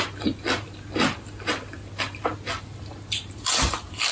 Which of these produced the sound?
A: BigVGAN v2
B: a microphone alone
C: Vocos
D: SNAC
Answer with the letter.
B